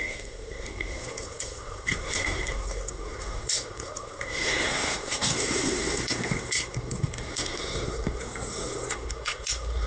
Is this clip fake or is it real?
fake